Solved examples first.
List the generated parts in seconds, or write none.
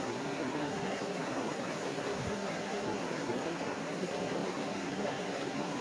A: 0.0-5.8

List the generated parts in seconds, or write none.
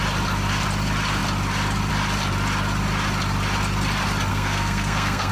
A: 4.3-5.3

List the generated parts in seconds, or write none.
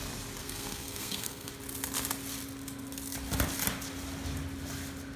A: 0.4-1.5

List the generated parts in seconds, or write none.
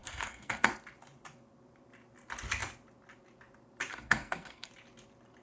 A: 0.0-0.7; 3.9-4.7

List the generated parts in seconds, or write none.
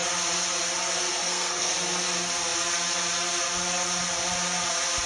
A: 1.1-1.7